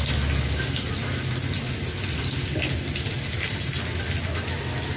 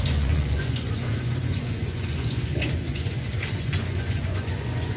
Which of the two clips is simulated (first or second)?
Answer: second